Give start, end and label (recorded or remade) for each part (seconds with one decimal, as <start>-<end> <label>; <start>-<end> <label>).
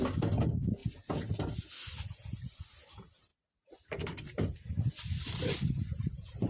0.0-6.5 recorded